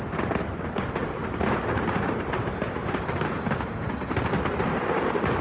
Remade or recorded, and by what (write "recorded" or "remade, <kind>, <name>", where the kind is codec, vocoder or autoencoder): recorded